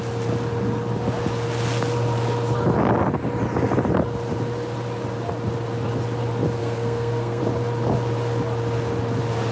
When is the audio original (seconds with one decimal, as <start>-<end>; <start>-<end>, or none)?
0.0-6.6; 7.4-9.5